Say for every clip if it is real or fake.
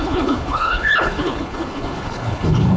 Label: fake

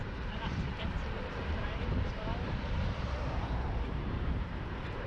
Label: fake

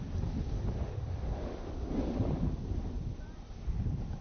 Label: real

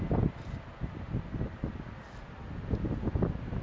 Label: real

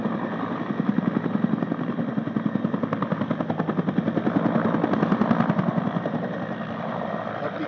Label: real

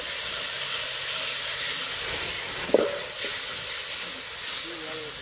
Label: real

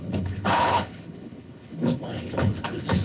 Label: fake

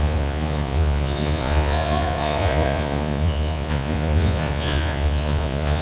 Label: fake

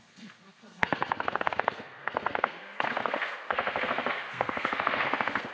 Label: fake